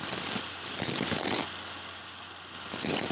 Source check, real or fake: real